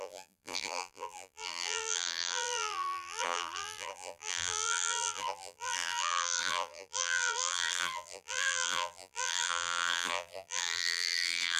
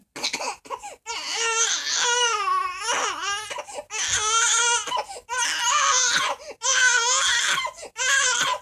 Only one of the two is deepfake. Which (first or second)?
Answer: first